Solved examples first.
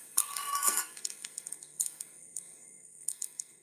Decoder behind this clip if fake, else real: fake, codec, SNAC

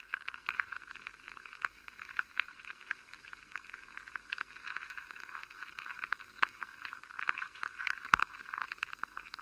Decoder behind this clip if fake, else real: fake, codec, SNAC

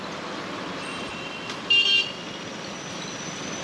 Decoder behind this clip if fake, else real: real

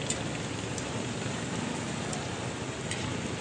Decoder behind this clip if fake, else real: real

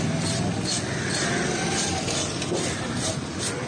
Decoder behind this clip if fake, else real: real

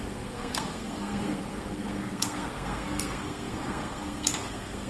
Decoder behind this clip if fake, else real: fake, codec, SNAC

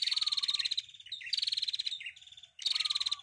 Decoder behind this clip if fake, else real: real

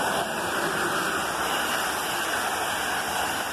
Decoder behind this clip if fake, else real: real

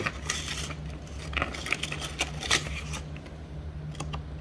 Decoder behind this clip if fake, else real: real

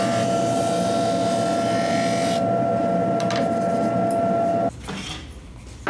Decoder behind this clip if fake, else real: real